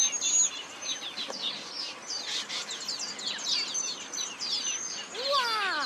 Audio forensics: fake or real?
real